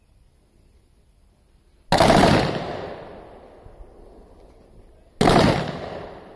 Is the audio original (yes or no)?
yes